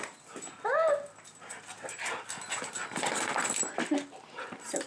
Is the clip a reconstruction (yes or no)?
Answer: no